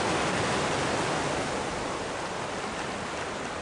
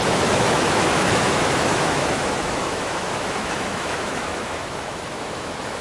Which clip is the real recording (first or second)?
first